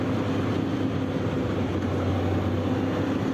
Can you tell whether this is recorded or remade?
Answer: recorded